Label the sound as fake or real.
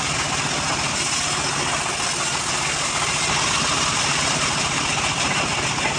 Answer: real